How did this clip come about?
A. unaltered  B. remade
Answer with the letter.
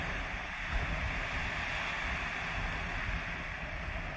A